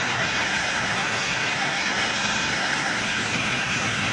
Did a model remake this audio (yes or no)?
yes